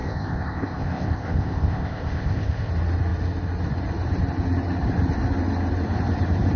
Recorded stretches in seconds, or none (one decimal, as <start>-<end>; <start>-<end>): 2.7-6.6